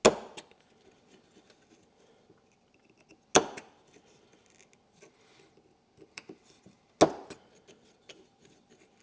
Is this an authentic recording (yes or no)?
yes